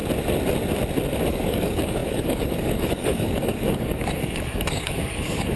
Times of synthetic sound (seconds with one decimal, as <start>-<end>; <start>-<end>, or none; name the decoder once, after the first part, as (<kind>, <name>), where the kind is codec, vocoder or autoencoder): 1.3-5.6 (codec, DAC)